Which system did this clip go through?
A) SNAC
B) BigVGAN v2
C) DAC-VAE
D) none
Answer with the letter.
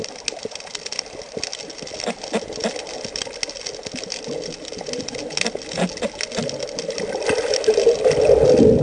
D